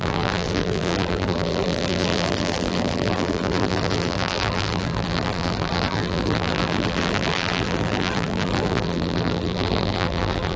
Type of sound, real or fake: fake